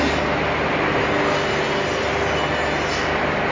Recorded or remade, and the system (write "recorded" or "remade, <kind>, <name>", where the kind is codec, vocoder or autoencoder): recorded